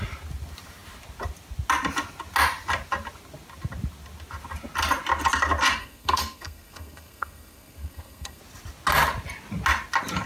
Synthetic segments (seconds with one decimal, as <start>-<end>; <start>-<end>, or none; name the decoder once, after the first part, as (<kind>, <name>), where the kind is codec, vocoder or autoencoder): 5.8-8.4 (codec, SNAC)